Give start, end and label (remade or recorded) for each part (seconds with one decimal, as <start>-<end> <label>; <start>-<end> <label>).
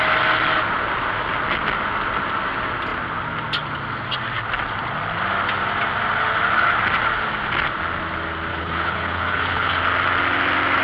0.0-8.5 recorded; 8.5-9.8 remade; 9.8-10.8 recorded